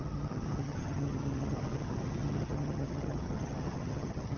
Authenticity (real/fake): fake